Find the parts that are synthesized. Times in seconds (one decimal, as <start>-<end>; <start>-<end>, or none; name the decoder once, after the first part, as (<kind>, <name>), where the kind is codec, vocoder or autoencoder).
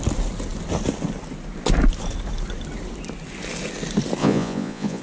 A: 4.2-5.0 (vocoder, Vocos)